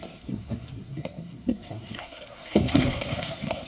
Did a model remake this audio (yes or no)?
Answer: yes